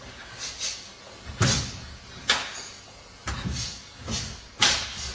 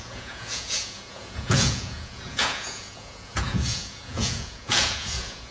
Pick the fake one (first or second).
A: second